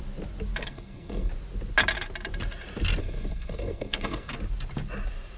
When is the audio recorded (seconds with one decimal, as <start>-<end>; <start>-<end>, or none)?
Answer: 0.0-0.6; 1.3-3.0; 4.3-5.4